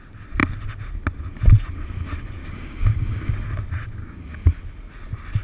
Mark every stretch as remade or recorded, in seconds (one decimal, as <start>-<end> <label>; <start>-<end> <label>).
0.0-2.4 recorded; 2.4-3.3 remade; 3.3-4.0 recorded; 4.0-4.6 remade; 4.6-5.4 recorded